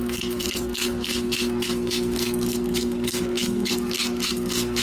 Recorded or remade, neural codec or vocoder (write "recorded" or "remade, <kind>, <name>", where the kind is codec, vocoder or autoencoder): remade, codec, SNAC